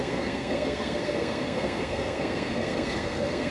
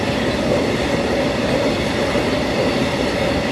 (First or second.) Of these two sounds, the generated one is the first